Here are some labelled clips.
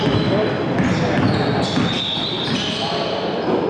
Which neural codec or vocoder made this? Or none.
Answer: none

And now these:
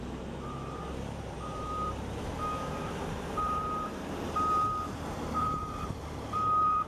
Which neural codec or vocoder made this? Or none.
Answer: vocoder, BigVGAN v2